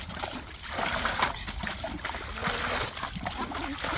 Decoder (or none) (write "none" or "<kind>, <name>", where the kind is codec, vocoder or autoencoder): none